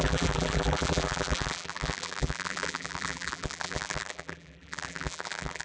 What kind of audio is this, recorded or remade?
remade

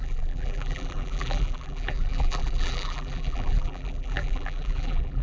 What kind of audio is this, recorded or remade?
remade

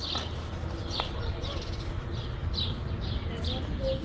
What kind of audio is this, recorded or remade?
recorded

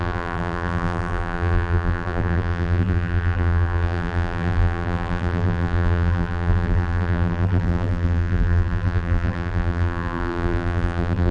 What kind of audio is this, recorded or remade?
remade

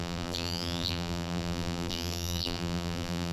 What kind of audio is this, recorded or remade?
remade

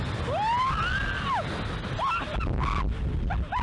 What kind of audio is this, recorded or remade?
recorded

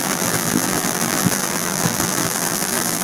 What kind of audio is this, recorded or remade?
remade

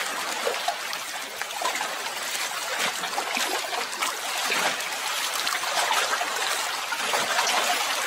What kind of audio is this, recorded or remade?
recorded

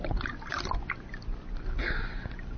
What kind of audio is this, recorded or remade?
recorded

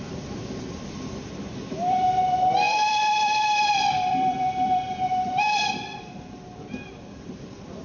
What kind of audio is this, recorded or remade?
remade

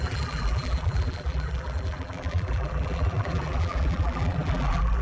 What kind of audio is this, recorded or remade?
remade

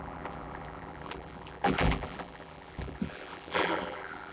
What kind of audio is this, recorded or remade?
remade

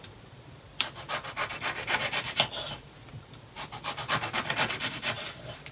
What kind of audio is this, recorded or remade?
remade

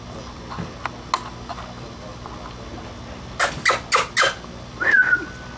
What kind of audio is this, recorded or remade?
recorded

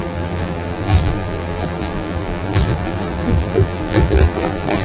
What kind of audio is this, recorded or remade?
remade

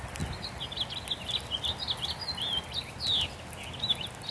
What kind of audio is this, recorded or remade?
recorded